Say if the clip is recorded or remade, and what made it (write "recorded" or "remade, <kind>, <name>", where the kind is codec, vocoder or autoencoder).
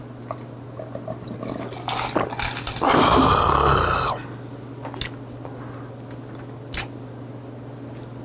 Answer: recorded